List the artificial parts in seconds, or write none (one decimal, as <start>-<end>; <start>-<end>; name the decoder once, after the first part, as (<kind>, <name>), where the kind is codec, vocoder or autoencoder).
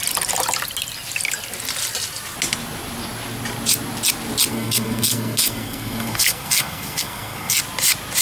4.5-7.6 (codec, SNAC)